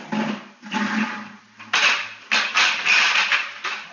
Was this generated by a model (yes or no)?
no